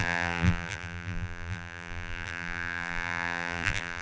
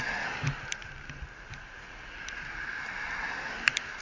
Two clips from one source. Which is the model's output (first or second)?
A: first